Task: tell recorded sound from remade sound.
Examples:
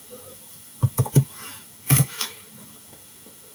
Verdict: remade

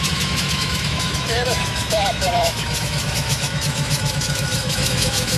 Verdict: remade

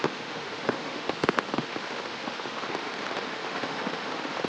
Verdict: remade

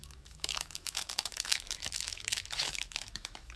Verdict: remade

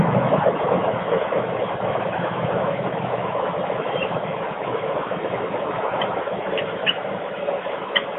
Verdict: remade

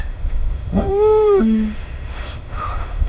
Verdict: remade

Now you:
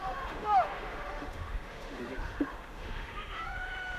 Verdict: remade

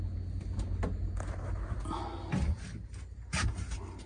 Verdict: recorded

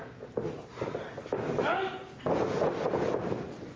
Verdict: recorded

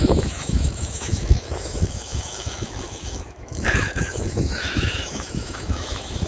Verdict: remade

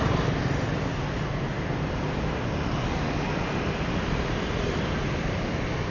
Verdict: recorded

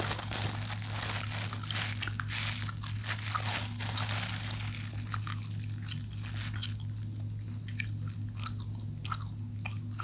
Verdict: recorded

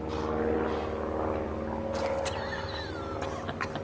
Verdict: recorded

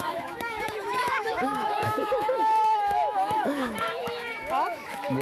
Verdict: remade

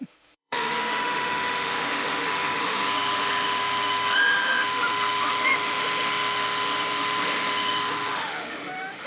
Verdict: remade